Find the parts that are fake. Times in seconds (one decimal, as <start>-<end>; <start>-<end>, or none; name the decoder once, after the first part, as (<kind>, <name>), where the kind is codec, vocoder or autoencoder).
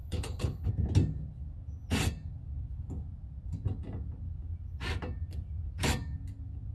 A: 0.0-0.7 (codec, HILCodec)